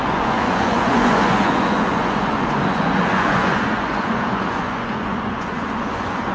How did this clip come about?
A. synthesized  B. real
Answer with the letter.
A